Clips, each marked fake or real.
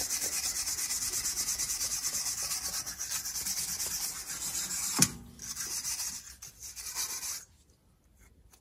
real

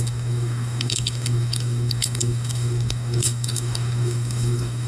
fake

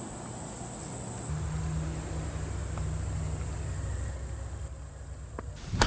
real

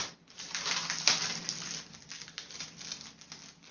real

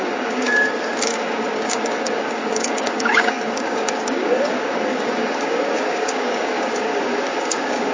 fake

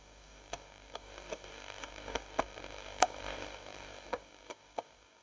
fake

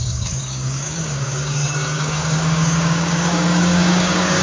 fake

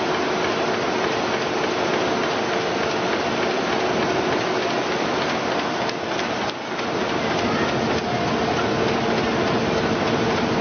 real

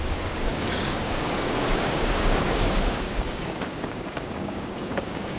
fake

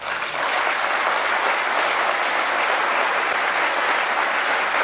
real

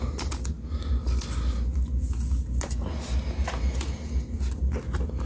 real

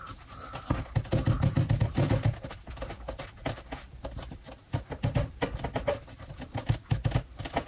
real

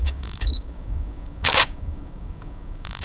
fake